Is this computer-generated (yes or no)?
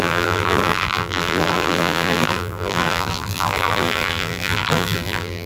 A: yes